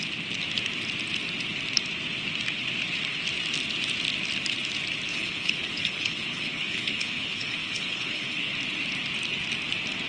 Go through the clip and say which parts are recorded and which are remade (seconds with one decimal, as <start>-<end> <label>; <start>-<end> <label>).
0.0-5.1 recorded; 5.1-8.5 remade; 8.5-10.1 recorded